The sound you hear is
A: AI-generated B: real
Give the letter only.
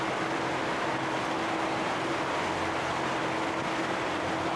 B